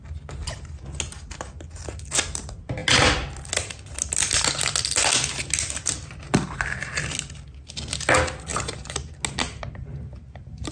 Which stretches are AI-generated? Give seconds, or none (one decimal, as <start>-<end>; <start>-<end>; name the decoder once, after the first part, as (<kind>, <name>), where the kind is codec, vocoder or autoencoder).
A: none